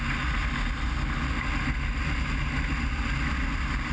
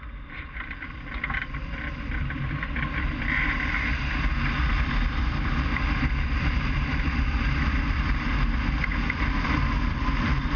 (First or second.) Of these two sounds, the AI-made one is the second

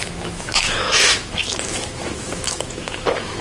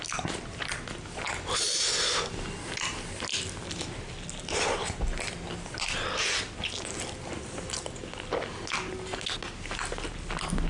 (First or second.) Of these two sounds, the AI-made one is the first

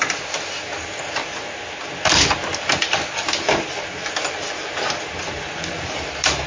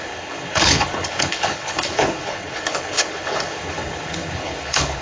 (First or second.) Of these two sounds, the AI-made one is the second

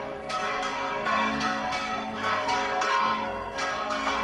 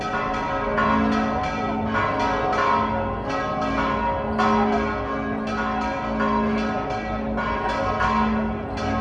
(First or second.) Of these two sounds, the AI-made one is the first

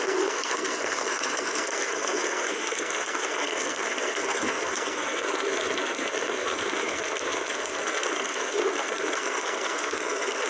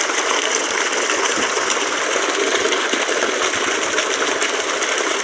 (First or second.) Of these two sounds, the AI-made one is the first